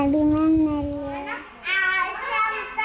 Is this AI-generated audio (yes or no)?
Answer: no